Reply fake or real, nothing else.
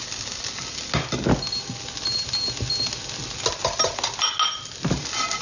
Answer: real